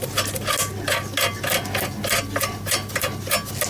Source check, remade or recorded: recorded